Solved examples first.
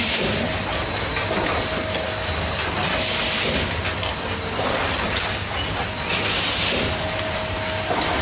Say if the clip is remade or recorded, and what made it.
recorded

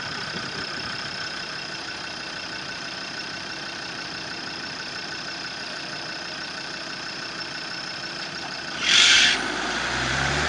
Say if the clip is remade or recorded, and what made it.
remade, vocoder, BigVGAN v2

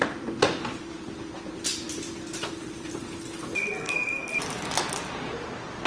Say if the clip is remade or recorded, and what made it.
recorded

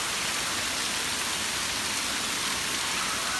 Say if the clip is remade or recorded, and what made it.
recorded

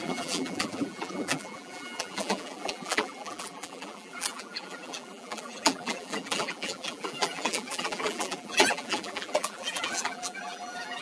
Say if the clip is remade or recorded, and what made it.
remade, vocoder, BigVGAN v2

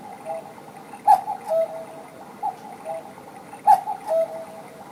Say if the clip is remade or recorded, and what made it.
recorded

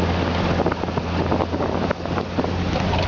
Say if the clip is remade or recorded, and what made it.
recorded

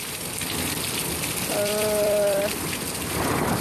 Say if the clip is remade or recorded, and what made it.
remade, vocoder, BigVGAN v2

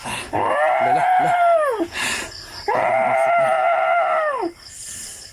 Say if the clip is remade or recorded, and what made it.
recorded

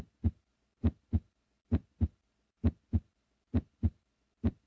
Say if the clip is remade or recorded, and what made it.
remade, vocoder, BigVGAN v2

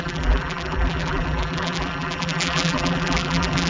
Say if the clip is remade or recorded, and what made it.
remade, vocoder, BigVGAN v2